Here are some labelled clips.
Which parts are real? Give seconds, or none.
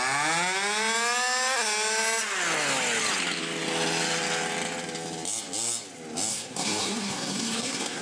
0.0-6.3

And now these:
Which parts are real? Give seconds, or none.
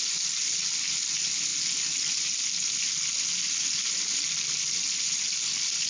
0.0-5.9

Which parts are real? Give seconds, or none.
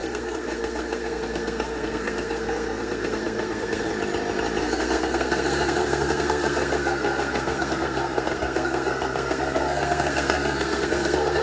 3.9-4.6